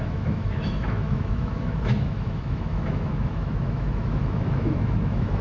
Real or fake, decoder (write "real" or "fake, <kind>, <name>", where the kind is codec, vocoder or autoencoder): fake, autoencoder, DAC-VAE